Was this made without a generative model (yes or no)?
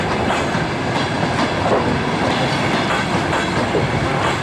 yes